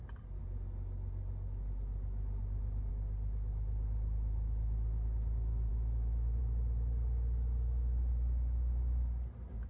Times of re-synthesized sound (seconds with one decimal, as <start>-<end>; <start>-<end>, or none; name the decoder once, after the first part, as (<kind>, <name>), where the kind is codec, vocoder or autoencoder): none